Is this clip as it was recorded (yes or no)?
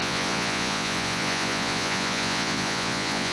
no